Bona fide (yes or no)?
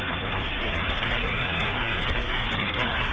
no